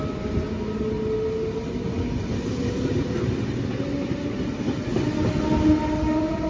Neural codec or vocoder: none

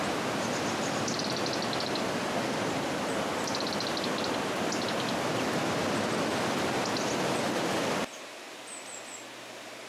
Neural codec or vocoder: none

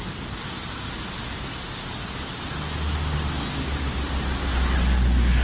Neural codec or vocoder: none